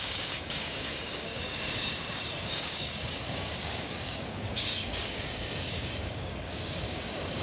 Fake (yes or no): yes